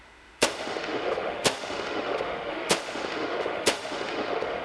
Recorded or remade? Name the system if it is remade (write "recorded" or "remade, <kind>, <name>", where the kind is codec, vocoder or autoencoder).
remade, autoencoder, DAC-VAE